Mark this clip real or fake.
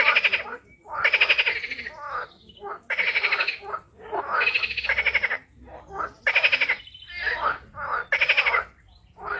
real